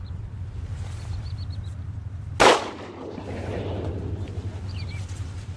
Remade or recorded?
recorded